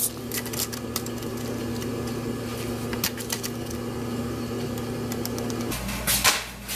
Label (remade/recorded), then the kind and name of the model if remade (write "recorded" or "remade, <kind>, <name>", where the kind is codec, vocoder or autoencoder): recorded